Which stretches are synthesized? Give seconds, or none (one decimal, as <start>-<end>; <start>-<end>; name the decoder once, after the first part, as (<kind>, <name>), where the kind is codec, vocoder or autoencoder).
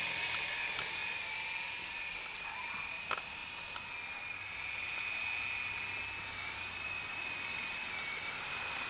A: none